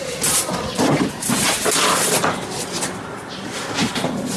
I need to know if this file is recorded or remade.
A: recorded